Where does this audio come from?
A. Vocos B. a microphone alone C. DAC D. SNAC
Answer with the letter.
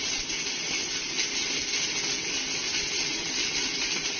B